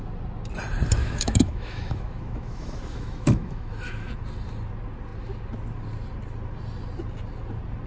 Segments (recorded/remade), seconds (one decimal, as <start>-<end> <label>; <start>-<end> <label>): 0.0-1.0 recorded; 1.0-4.1 remade; 4.1-7.9 recorded